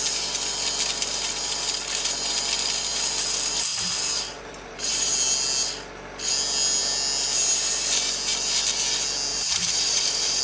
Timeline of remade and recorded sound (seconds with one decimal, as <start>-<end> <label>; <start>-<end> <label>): 0.0-3.7 recorded; 3.7-5.1 remade; 5.1-9.3 recorded; 9.3-10.4 remade